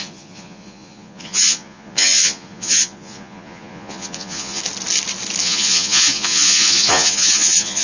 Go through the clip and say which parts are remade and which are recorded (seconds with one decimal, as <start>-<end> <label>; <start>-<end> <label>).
0.0-4.6 remade; 4.6-5.4 recorded; 5.4-7.8 remade